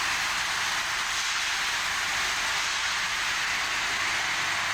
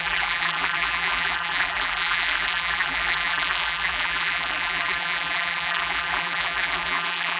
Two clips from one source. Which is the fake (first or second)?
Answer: second